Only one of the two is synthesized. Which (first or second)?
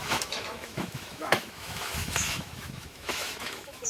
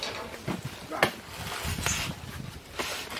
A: first